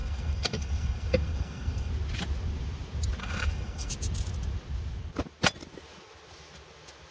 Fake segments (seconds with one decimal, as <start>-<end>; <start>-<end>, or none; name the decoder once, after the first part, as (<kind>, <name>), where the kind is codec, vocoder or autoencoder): 0.0-1.9 (codec, SNAC); 3.2-3.9